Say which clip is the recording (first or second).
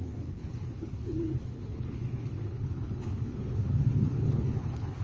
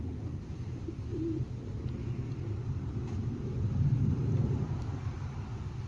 second